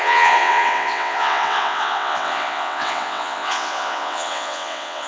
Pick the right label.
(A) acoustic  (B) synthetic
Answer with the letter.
B